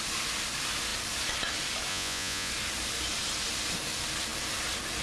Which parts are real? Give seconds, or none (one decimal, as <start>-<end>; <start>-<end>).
0.0-1.9; 2.5-5.0

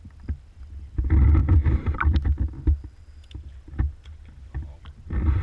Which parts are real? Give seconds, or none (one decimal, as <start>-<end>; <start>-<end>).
0.0-5.4

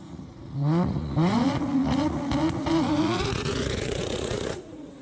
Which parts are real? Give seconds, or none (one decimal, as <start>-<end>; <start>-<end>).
none

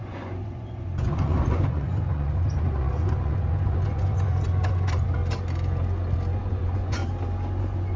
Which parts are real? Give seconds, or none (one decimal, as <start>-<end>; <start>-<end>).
5.2-6.4; 7.0-7.6

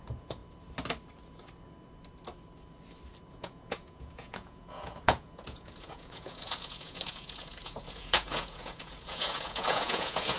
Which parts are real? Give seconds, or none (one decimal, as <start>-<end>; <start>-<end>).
0.4-3.3